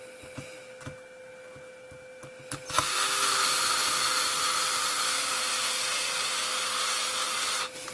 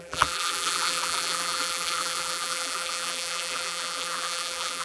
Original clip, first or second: first